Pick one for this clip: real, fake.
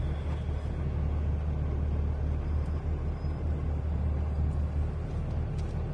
real